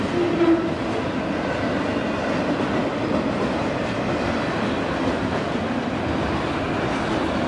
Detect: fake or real real